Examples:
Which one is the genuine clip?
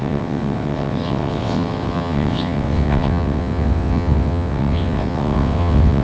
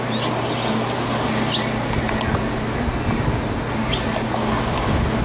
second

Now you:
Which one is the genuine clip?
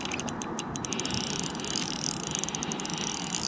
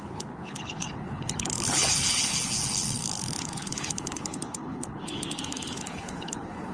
first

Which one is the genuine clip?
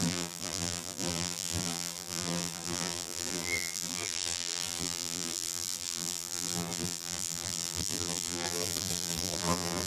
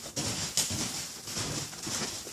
second